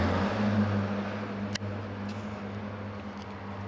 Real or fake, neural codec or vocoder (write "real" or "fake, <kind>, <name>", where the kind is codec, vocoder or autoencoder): real